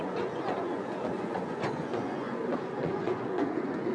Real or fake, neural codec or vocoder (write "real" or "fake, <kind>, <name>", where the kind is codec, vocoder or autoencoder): fake, vocoder, Vocos